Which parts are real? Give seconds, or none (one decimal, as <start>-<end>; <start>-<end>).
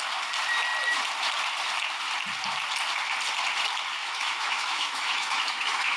0.0-4.0